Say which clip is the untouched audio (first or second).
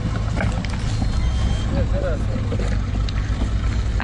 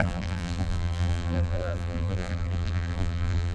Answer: first